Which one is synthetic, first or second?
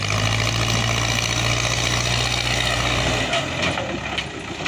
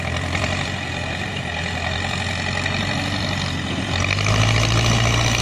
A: second